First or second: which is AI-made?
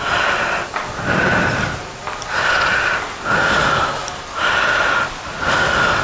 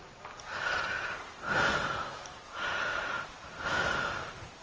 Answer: second